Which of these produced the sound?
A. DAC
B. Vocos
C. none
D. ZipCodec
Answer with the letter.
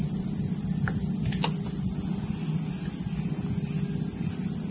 C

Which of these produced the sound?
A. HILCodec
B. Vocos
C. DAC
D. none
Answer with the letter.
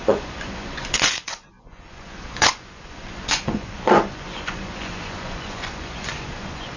B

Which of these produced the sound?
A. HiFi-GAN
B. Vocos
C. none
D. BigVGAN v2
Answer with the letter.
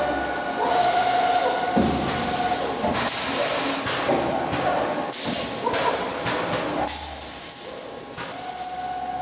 C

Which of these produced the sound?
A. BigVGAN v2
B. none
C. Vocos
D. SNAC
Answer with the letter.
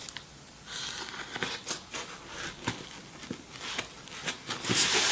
B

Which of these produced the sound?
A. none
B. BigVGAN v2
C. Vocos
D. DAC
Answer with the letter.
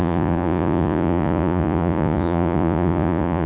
C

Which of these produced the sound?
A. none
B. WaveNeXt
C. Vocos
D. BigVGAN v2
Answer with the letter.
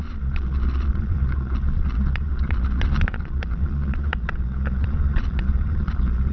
C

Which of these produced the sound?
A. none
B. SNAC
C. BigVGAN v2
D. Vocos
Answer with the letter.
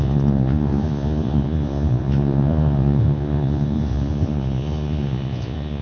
D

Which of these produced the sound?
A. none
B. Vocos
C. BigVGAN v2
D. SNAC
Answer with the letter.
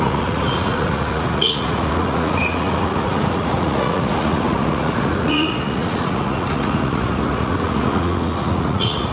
B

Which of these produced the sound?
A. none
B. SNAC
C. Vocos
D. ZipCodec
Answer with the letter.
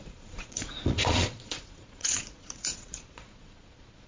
C